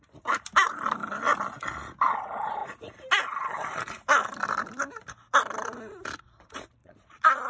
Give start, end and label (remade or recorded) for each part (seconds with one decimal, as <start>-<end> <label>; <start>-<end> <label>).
0.0-6.8 recorded; 6.8-7.5 remade